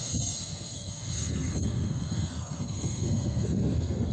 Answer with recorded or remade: remade